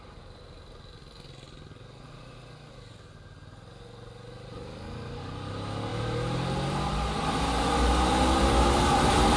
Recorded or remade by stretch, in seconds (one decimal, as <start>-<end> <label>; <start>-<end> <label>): 0.0-9.4 recorded